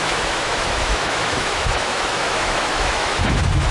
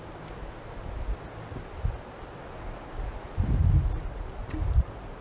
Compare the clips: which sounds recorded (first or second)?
second